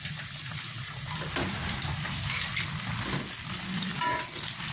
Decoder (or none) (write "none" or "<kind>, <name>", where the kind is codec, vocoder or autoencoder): none